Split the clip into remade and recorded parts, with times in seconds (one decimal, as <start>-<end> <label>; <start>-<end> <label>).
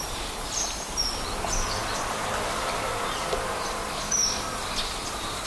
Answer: 0.0-5.5 recorded